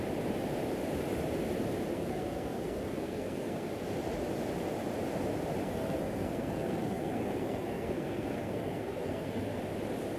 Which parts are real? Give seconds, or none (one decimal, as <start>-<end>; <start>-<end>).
0.0-1.9; 3.7-5.6; 9.6-10.2